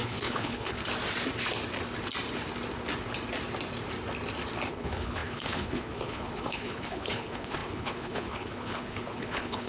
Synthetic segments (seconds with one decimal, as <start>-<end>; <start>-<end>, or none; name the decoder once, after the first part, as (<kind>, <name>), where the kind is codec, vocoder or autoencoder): 0.0-0.8 (codec, HILCodec); 4.7-9.7